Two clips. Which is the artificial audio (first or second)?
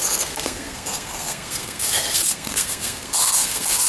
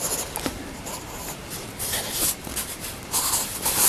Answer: first